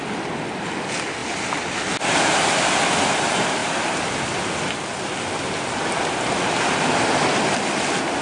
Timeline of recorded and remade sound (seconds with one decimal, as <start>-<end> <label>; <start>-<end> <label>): 0.0-8.2 recorded